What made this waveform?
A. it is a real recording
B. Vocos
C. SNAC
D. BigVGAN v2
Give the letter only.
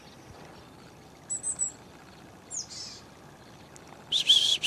A